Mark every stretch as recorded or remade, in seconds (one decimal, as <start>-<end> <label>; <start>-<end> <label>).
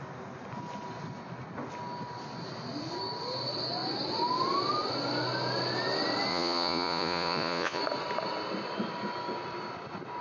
0.0-6.3 recorded; 6.3-7.8 remade; 7.8-10.2 recorded